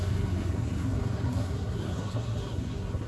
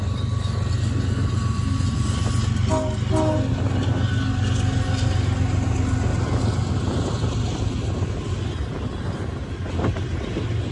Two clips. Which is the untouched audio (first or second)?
second